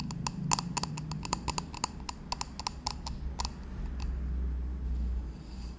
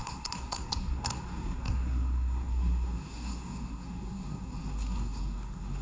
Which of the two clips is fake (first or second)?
second